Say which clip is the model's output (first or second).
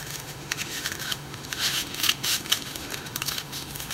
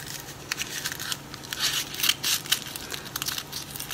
first